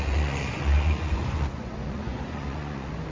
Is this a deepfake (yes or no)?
yes